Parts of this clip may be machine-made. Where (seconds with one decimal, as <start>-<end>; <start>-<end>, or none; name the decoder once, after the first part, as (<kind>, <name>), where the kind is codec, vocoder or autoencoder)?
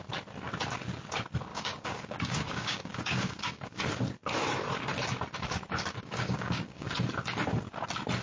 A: 1.5-3.8 (codec, DAC); 6.0-6.9